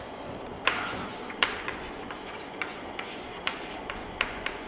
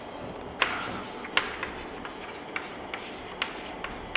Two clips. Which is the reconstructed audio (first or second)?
first